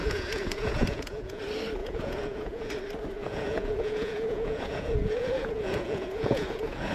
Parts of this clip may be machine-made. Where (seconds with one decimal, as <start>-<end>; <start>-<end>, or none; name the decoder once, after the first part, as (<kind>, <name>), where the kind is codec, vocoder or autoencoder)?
0.0-1.4 (vocoder, Vocos); 1.8-2.7; 3.2-6.9